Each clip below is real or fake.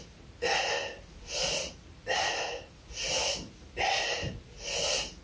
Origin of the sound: real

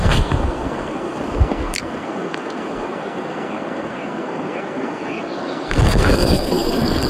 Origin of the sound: fake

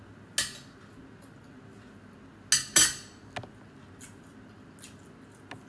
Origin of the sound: real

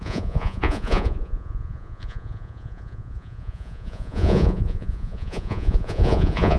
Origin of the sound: fake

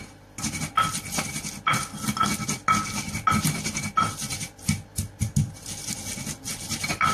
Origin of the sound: real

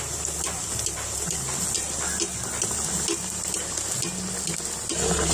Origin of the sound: real